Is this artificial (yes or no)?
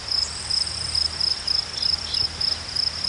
no